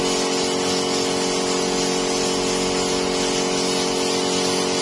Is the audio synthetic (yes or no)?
no